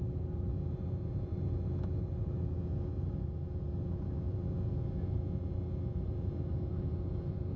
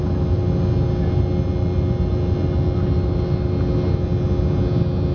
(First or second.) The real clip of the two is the second